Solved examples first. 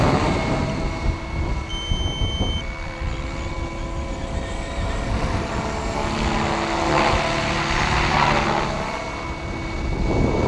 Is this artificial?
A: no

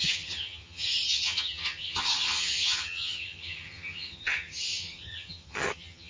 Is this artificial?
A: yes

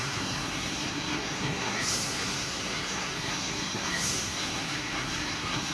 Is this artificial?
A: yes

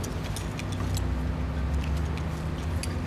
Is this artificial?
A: no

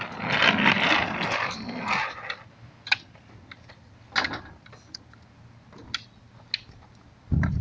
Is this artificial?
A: no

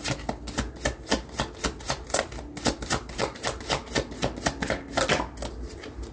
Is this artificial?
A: no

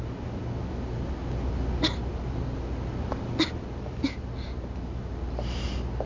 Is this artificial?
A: no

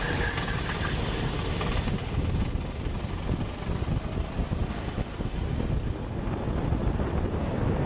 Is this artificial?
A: no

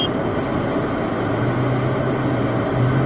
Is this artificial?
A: no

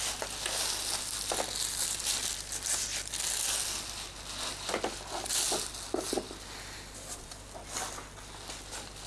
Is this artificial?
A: no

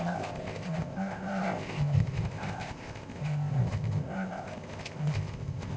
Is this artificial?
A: yes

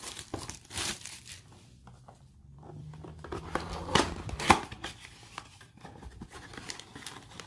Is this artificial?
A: yes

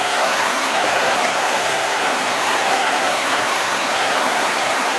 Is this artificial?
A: yes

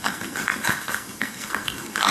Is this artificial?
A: yes